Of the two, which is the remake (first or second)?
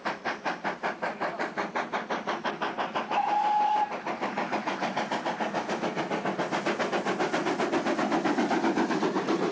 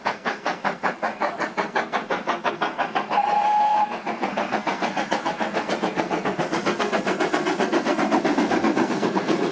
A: second